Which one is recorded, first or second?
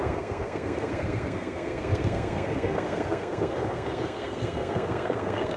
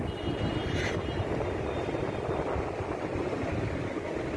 second